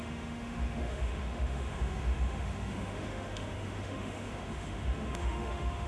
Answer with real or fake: fake